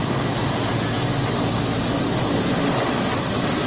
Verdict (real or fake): real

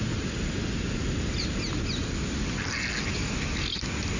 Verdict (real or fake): real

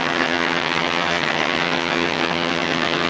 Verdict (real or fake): fake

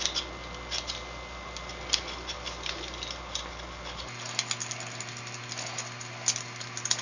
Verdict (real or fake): real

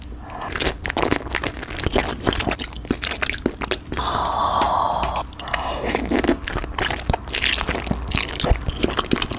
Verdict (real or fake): real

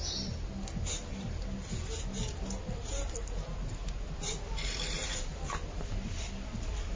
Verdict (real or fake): real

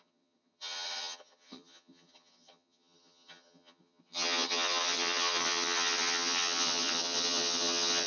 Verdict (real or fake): fake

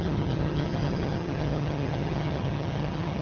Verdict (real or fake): fake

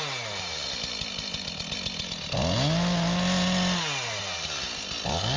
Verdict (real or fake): real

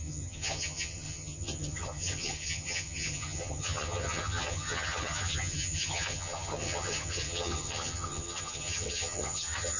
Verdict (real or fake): fake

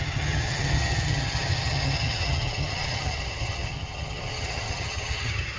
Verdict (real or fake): fake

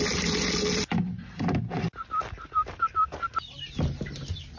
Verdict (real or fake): real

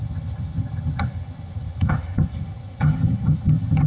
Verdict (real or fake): fake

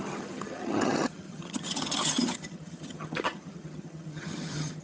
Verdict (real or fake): fake